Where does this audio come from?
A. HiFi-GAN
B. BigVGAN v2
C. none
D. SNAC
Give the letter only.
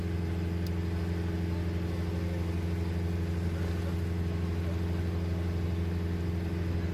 C